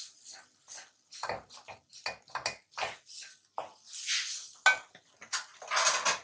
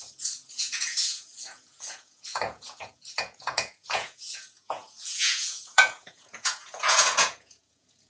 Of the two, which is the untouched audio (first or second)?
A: first